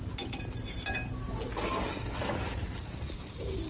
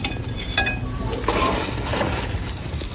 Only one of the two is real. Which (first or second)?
first